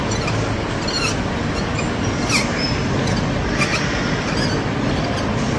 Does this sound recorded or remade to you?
recorded